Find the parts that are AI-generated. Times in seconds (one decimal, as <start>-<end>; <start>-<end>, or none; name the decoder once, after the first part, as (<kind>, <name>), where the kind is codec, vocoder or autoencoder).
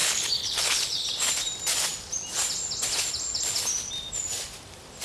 0.0-1.1 (codec, HILCodec)